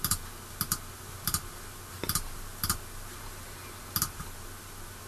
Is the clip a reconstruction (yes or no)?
no